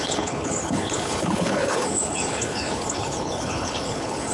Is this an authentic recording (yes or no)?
no